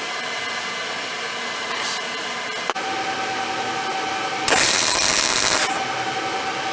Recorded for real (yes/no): yes